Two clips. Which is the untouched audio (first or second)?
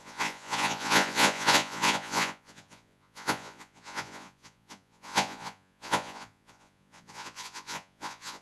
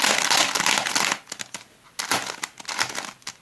second